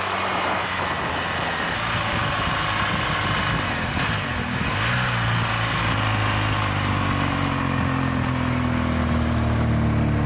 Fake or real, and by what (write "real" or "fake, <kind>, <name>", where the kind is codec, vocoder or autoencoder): real